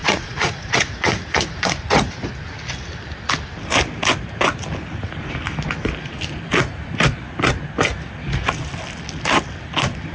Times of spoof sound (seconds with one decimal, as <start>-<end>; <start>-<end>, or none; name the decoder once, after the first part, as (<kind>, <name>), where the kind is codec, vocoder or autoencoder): 0.0-2.3 (vocoder, Vocos)